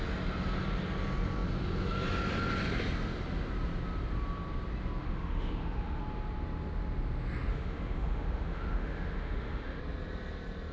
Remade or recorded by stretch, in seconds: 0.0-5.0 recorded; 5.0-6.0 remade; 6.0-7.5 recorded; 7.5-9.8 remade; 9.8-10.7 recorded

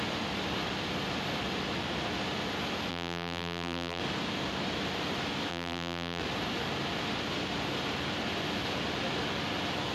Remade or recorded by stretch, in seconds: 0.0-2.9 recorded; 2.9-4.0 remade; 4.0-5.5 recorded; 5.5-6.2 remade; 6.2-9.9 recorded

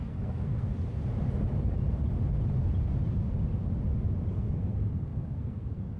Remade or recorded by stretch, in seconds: 0.0-0.7 remade; 0.7-4.3 recorded; 4.3-6.0 remade

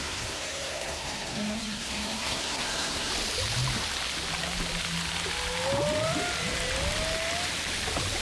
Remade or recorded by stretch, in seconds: 0.0-3.1 remade; 3.1-8.2 recorded

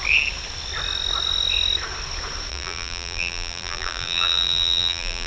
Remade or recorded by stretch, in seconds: 0.0-2.5 recorded; 2.5-5.3 remade

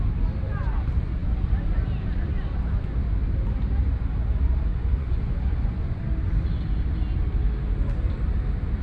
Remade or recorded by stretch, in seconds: 0.0-4.7 recorded; 4.7-6.0 remade; 6.0-8.8 recorded

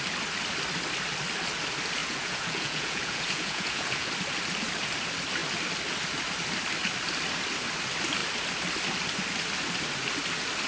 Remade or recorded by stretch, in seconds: 0.0-2.0 recorded; 2.0-4.1 remade; 4.1-10.7 recorded

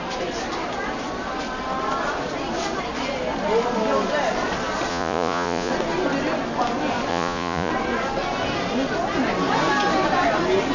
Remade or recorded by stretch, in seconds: 0.0-4.9 recorded; 4.9-5.7 remade; 5.7-7.1 recorded; 7.1-7.7 remade; 7.7-10.7 recorded